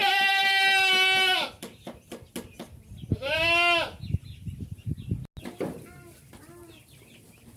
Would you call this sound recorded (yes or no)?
yes